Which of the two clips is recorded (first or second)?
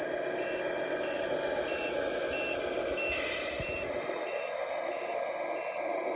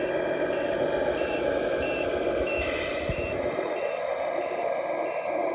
first